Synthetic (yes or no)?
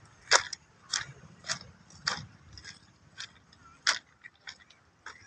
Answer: no